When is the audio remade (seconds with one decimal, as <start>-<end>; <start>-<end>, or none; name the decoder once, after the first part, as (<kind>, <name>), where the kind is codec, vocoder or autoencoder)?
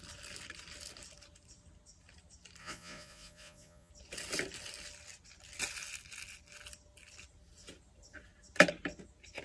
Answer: 2.6-3.9 (vocoder, Vocos)